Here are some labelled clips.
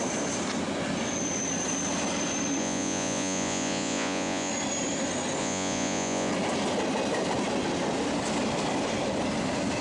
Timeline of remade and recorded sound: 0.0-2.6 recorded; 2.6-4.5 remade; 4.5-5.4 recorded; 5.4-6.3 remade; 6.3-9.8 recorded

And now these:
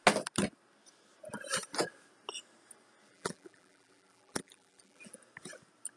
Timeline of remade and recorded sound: 0.0-3.1 recorded; 3.1-5.1 remade; 5.1-6.0 recorded

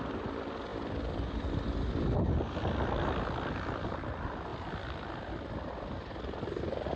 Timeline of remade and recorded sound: 0.0-4.5 recorded; 4.5-6.6 remade; 6.6-7.0 recorded

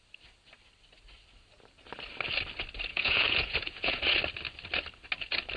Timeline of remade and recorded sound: 0.0-2.9 recorded; 2.9-4.0 remade; 4.0-5.6 recorded

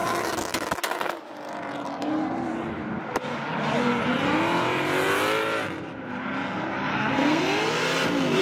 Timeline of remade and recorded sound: 0.0-6.9 recorded; 6.9-7.4 remade; 7.4-8.4 recorded

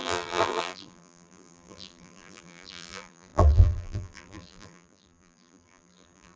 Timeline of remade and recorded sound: 0.0-6.4 remade

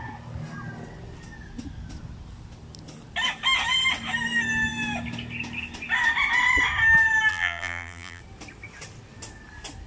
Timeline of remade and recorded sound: 0.0-7.3 recorded; 7.3-8.2 remade; 8.2-9.9 recorded

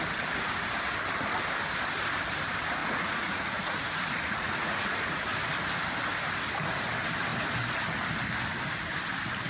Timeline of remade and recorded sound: 0.0-2.8 recorded; 2.8-5.3 remade; 5.3-9.5 recorded